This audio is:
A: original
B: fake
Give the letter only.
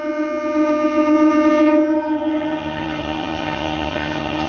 B